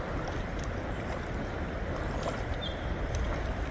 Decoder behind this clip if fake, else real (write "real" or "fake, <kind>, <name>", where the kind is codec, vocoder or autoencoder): real